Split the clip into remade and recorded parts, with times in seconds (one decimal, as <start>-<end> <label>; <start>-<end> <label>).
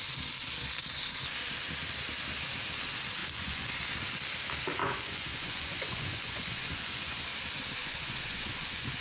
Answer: 0.0-3.2 recorded; 3.2-3.8 remade; 3.8-4.8 recorded; 4.8-7.2 remade; 7.2-7.8 recorded; 7.8-9.0 remade